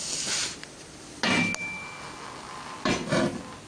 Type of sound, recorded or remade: recorded